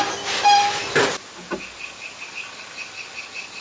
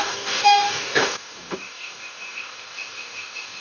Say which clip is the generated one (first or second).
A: second